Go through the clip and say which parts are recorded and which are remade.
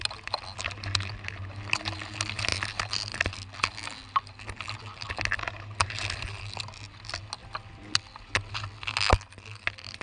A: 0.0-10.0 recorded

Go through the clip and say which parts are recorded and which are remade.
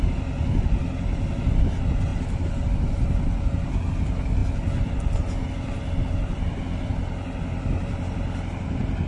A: 0.0-2.1 recorded; 2.1-2.7 remade; 2.7-9.1 recorded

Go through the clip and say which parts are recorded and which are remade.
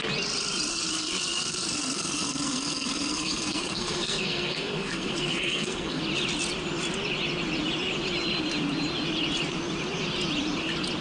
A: 0.0-0.7 recorded; 0.7-6.0 remade; 6.0-11.0 recorded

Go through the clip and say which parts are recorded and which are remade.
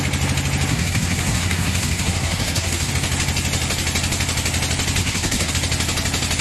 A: 0.0-0.7 recorded; 0.7-2.9 remade; 2.9-5.0 recorded; 5.0-5.5 remade; 5.5-6.4 recorded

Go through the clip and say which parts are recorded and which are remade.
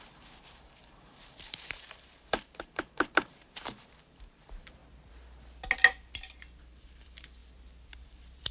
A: 0.0-4.8 remade; 4.8-6.6 recorded; 6.6-7.4 remade; 7.4-8.0 recorded; 8.0-8.5 remade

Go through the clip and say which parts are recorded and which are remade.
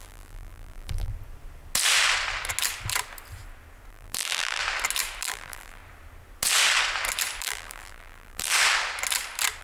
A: 0.0-1.1 remade; 1.1-3.9 recorded; 3.9-4.6 remade; 4.6-5.2 recorded; 5.2-5.8 remade; 5.8-7.4 recorded; 7.4-8.5 remade; 8.5-9.6 recorded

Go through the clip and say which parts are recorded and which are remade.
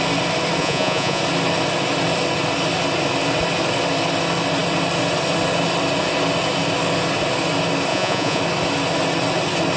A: 0.0-0.6 recorded; 0.6-1.2 remade; 1.2-7.9 recorded; 7.9-8.4 remade; 8.4-9.8 recorded